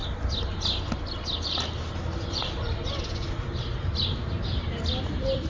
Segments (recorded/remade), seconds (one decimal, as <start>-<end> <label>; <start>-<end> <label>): 0.0-3.3 recorded; 3.3-5.5 remade